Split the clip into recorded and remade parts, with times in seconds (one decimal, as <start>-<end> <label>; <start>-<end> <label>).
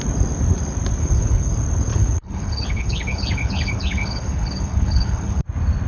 0.0-1.0 recorded; 1.0-1.5 remade; 1.5-1.9 recorded; 1.9-5.4 remade; 5.4-5.9 recorded